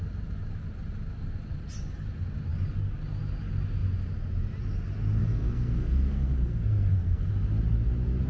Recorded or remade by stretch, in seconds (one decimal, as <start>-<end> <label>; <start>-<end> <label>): 0.0-5.2 recorded; 5.2-7.3 remade; 7.3-8.3 recorded